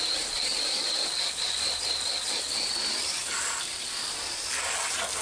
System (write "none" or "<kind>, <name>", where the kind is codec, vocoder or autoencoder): vocoder, BigVGAN v2